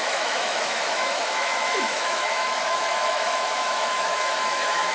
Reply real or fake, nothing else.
fake